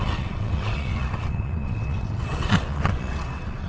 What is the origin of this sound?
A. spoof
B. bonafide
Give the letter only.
A